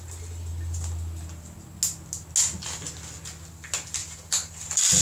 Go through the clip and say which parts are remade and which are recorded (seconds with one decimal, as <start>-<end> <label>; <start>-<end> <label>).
0.0-4.0 recorded; 4.0-5.0 remade